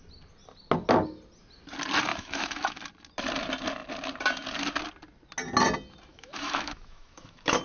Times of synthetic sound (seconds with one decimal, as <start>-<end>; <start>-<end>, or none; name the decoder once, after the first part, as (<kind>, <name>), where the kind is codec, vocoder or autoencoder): 2.1-2.8 (autoencoder, DAC-VAE); 6.1-7.6